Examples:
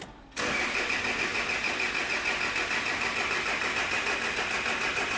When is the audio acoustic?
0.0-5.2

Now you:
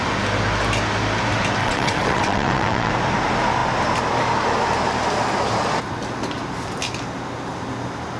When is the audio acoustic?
0.0-1.6; 2.9-8.2

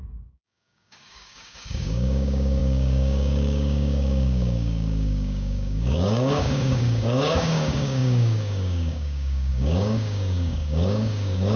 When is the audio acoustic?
none

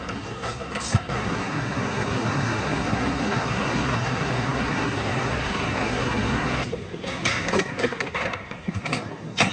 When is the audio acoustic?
none

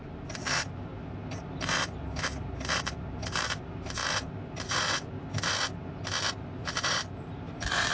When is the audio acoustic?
0.9-3.1; 4.0-6.3